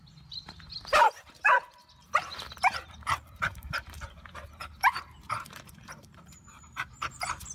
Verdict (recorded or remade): remade